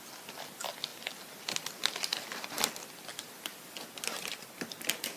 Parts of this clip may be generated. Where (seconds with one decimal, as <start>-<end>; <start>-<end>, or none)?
2.1-2.6; 3.1-5.2